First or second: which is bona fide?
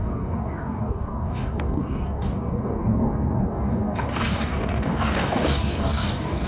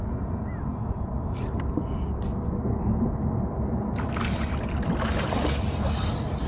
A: second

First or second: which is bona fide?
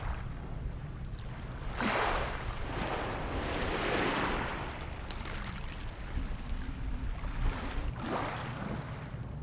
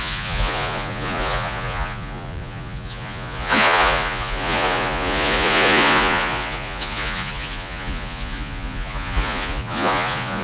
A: first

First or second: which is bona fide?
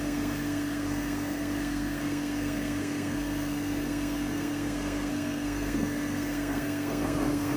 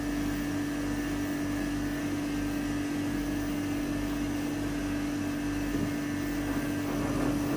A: second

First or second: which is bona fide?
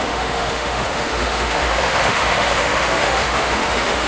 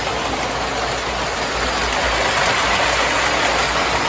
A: second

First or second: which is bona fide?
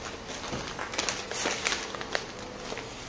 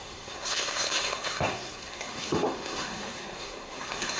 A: first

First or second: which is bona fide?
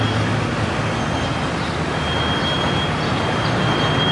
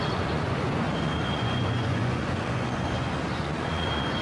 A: first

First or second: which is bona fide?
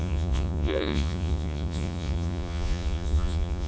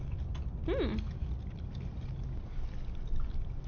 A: second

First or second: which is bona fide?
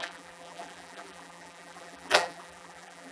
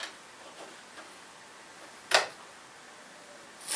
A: second